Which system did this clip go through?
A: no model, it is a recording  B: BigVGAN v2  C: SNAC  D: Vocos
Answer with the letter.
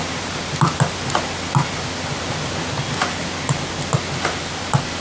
A